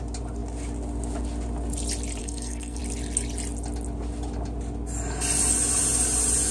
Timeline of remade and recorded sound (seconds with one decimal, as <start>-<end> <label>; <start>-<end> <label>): 0.0-2.2 recorded; 2.2-2.8 remade; 2.8-6.5 recorded